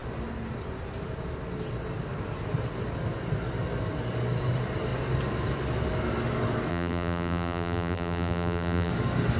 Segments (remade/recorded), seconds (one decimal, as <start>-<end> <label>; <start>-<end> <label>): 0.0-6.7 recorded; 6.7-8.9 remade; 8.9-9.4 recorded